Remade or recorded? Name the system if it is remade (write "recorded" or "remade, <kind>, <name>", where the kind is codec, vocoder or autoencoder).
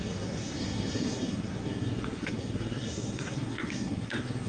remade, codec, SNAC